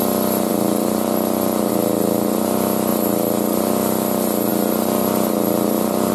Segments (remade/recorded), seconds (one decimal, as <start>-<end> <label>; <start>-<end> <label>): 0.0-0.5 recorded; 0.5-1.7 remade; 1.7-2.9 recorded; 2.9-3.6 remade; 3.6-4.5 recorded; 4.5-6.1 remade